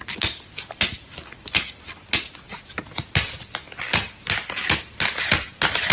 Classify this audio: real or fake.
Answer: real